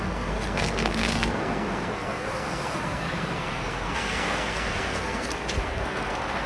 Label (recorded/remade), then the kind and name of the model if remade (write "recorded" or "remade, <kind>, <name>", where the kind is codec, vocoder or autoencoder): remade, codec, SNAC